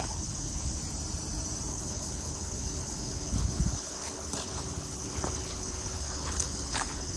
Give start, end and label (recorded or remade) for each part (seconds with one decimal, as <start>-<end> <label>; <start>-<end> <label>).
0.0-0.8 remade; 0.8-1.7 recorded; 1.7-7.2 remade